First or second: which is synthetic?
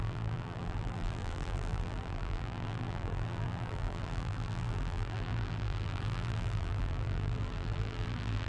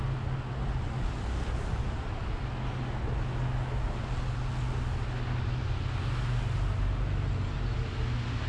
first